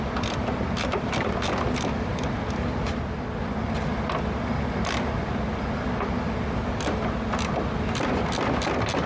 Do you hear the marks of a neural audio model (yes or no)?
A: no